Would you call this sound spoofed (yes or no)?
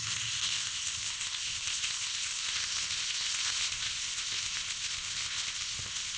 yes